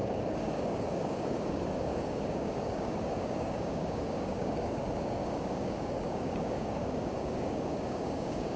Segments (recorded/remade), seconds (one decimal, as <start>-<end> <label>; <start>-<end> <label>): 0.0-8.6 remade